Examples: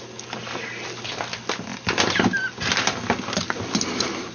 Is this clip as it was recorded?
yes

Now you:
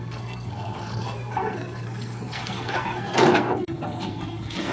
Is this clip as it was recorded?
no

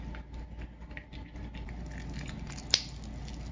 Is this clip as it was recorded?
yes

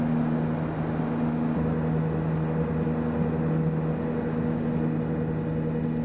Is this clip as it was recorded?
yes